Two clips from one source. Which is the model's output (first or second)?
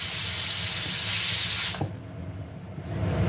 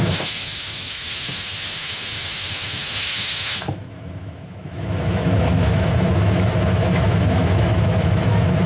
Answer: second